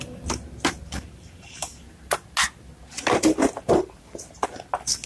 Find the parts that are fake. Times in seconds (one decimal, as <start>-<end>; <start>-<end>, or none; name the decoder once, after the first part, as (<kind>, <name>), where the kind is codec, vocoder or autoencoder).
none